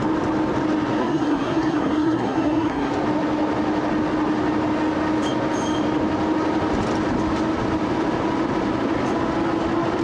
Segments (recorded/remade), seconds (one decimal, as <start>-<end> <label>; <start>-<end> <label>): 0.0-1.0 recorded; 1.0-2.9 remade; 2.9-10.0 recorded